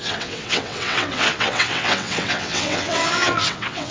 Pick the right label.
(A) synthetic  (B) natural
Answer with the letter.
A